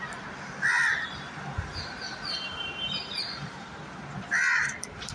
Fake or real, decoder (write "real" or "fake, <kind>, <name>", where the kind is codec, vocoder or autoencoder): fake, vocoder, BigVGAN v2